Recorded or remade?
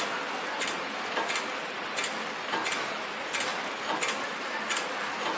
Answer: recorded